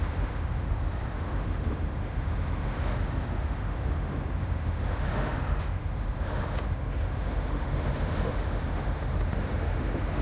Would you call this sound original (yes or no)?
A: no